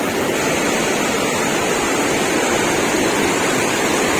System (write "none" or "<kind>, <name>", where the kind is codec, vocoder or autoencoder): none